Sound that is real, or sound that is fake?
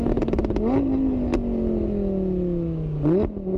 real